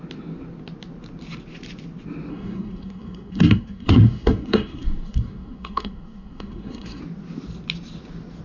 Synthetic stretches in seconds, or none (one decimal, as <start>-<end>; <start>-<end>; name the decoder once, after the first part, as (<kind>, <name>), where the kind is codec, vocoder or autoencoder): 2.3-7.0 (codec, SNAC)